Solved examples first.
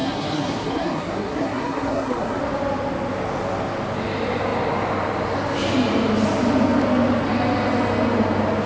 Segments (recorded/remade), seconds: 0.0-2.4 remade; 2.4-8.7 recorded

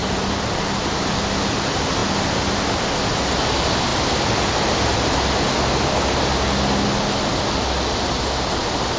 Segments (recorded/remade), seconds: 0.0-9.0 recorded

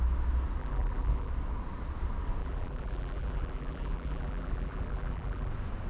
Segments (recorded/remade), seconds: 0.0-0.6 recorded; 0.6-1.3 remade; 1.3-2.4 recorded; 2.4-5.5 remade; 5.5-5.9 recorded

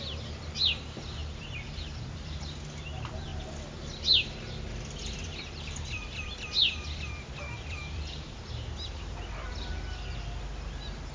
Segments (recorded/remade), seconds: 0.0-1.2 recorded; 1.2-2.5 remade; 2.5-5.0 recorded; 5.0-8.4 remade; 8.4-11.1 recorded

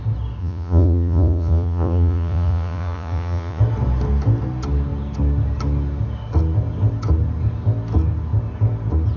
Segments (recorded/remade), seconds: 0.0-0.4 recorded; 0.4-3.6 remade; 3.6-9.2 recorded

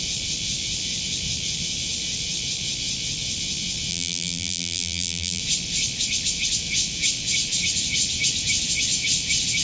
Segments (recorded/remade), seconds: 0.0-3.9 recorded; 3.9-5.4 remade; 5.4-9.6 recorded

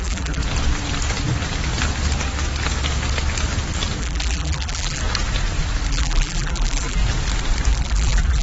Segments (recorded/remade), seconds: 0.0-0.4 remade; 0.4-4.0 recorded; 4.0-5.0 remade; 5.0-5.9 recorded; 5.9-7.0 remade; 7.0-7.7 recorded; 7.7-8.4 remade